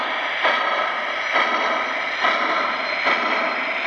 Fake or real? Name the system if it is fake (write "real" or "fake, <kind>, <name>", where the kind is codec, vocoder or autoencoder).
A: real